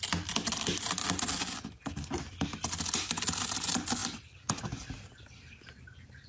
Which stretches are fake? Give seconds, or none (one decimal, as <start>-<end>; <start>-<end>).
none